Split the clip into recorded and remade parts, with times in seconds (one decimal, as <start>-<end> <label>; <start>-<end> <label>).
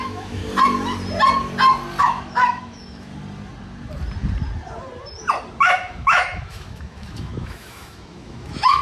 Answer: 0.0-0.4 remade; 0.4-2.0 recorded; 2.0-3.1 remade; 3.1-5.6 recorded; 5.6-8.8 remade